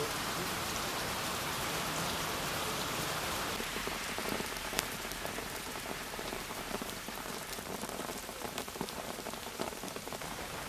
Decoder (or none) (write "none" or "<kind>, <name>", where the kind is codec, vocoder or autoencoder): vocoder, BigVGAN v2